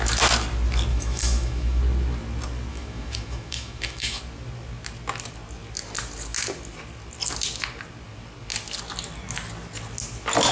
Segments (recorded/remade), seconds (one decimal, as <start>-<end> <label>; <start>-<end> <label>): 0.0-0.9 recorded; 0.9-1.8 remade; 1.8-2.7 recorded; 2.7-4.2 remade; 4.2-10.5 recorded